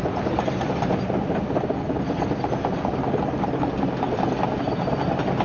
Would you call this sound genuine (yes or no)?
yes